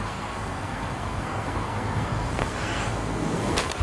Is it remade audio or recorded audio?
remade